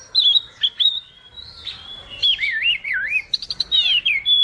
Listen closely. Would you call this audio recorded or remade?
remade